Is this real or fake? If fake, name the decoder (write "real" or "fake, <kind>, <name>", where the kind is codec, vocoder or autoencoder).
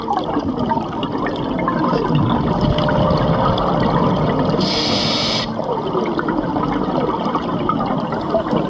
real